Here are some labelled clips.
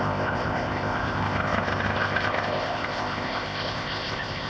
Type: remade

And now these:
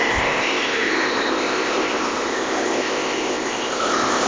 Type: remade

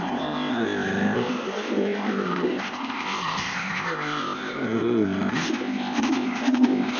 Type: remade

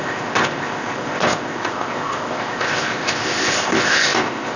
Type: remade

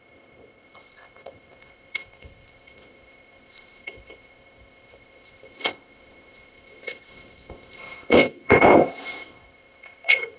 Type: remade